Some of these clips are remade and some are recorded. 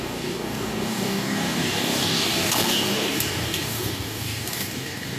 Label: remade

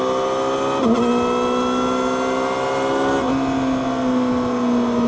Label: recorded